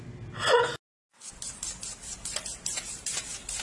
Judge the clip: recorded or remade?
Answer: recorded